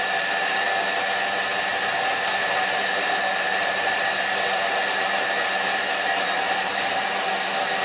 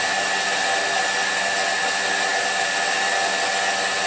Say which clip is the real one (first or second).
second